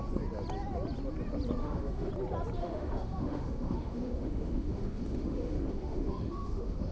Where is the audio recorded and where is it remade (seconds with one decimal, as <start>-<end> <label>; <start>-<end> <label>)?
0.0-1.6 recorded; 1.6-2.1 remade; 2.1-2.6 recorded; 2.6-6.9 remade